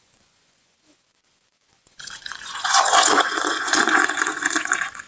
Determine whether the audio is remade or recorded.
remade